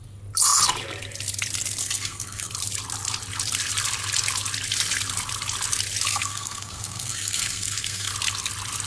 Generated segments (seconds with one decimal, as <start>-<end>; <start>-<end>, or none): 1.8-2.5; 6.1-8.1